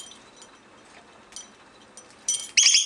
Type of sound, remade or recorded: recorded